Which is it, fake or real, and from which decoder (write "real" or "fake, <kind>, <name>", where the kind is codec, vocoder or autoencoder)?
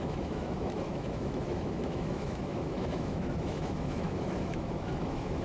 fake, autoencoder, DAC-VAE